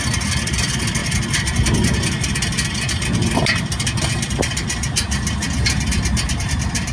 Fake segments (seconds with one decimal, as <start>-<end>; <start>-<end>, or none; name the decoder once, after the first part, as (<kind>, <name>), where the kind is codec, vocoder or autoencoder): none